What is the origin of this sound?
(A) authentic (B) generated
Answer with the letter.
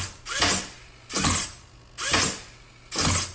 A